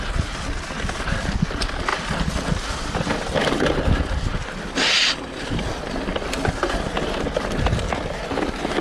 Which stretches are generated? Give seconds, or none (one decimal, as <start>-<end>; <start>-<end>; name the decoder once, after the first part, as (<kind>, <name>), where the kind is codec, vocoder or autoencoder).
1.9-3.6 (vocoder, BigVGAN v2)

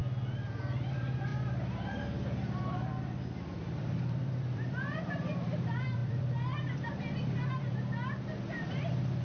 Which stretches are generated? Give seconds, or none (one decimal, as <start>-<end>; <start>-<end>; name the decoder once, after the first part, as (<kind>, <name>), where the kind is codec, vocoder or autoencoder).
0.6-9.2 (vocoder, BigVGAN v2)

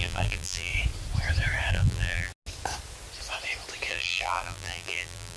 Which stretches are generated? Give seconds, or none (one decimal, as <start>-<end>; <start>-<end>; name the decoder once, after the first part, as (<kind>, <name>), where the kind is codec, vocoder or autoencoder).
0.0-0.7 (vocoder, BigVGAN v2); 1.7-2.3; 3.9-5.4

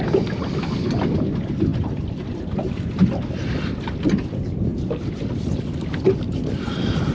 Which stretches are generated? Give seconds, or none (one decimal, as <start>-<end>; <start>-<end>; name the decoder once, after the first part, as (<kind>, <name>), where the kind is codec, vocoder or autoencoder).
1.7-2.3 (vocoder, BigVGAN v2)

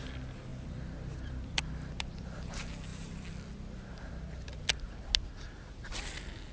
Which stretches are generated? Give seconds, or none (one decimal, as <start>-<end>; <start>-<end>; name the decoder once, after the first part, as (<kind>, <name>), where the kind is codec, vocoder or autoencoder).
0.5-1.6 (vocoder, BigVGAN v2)

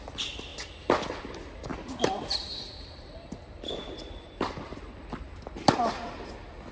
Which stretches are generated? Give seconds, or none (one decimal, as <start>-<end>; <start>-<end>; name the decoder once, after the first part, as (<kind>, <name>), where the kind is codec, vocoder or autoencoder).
1.7-5.6 (vocoder, BigVGAN v2)

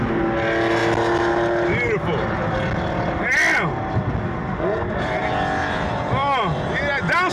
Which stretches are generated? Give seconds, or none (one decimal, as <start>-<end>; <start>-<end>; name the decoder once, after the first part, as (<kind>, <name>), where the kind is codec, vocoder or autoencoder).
5.6-6.1 (vocoder, BigVGAN v2)